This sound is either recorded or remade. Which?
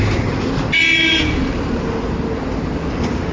recorded